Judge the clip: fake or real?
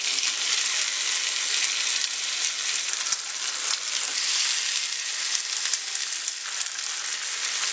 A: real